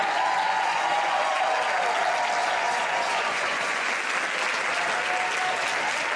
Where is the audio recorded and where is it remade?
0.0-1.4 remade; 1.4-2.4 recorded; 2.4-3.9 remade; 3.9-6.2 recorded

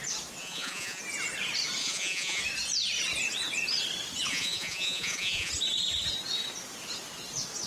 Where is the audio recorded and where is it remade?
0.0-0.4 recorded; 0.4-1.0 remade; 1.0-1.8 recorded; 1.8-2.4 remade; 2.4-4.3 recorded; 4.3-5.5 remade; 5.5-7.7 recorded

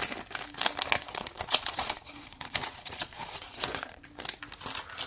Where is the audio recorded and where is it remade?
0.0-1.0 recorded; 1.0-4.1 remade; 4.1-5.1 recorded

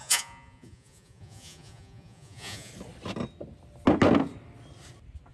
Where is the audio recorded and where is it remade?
0.0-2.7 remade; 2.7-5.3 recorded

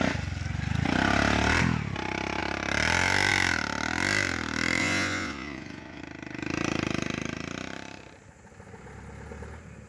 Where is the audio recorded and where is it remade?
0.0-4.8 recorded; 4.8-6.0 remade; 6.0-9.9 recorded

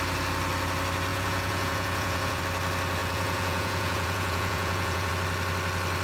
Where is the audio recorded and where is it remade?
0.0-1.1 recorded; 1.1-2.4 remade; 2.4-3.0 recorded; 3.0-5.1 remade; 5.1-6.0 recorded

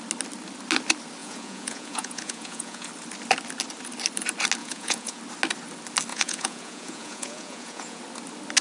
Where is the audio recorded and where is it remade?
0.0-1.2 recorded; 1.2-2.9 remade; 2.9-4.6 recorded; 4.6-5.2 remade; 5.2-6.1 recorded; 6.1-8.0 remade; 8.0-8.6 recorded